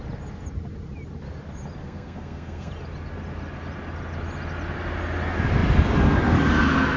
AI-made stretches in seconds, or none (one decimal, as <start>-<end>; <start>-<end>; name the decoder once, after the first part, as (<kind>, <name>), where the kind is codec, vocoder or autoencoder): 1.8-2.7 (codec, SNAC)